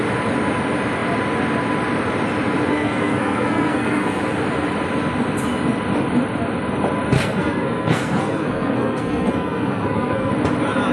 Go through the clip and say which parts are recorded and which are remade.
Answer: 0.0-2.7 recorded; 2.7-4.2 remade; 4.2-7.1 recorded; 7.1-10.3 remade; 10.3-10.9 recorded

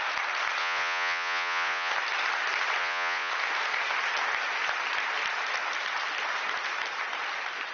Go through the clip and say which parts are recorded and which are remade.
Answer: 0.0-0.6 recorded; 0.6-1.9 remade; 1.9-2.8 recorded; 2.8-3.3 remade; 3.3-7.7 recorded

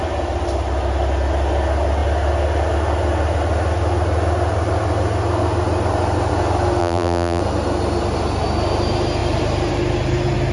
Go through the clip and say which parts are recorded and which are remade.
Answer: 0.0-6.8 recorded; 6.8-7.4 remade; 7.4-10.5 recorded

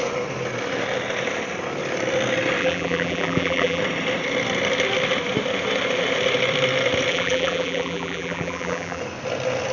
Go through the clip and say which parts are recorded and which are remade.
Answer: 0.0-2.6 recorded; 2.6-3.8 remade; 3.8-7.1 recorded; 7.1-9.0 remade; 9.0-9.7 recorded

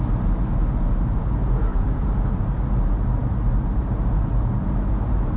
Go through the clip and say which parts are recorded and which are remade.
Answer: 0.0-1.7 recorded; 1.7-2.4 remade; 2.4-5.4 recorded

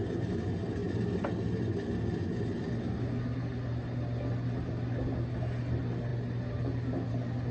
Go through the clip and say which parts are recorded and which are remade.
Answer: 0.0-7.5 recorded